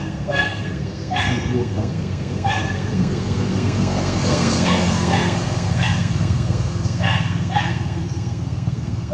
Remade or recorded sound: remade